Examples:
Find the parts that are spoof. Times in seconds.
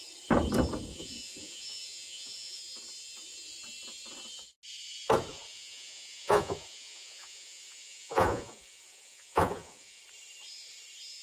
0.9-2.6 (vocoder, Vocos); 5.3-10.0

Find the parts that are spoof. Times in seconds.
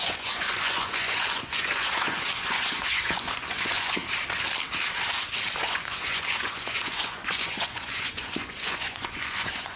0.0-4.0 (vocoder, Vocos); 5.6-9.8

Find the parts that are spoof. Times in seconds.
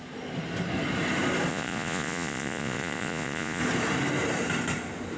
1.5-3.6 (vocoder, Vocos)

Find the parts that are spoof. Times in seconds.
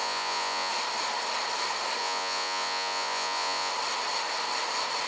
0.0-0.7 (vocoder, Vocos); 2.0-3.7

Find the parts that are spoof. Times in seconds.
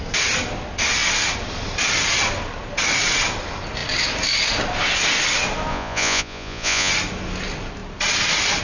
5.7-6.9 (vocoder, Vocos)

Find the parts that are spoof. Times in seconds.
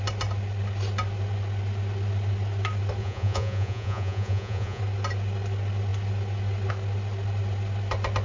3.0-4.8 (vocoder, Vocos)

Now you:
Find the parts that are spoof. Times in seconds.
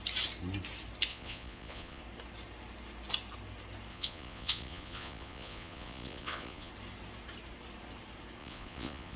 1.1-2.0 (vocoder, Vocos); 3.9-6.7; 8.4-9.2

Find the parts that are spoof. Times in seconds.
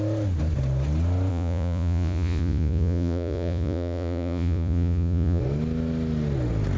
1.3-5.4 (vocoder, Vocos)